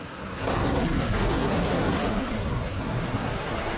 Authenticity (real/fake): fake